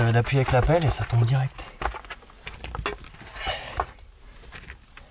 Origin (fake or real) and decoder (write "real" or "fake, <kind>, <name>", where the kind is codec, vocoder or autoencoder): real